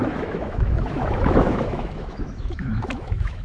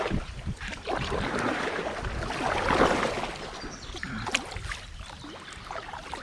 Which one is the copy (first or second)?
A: first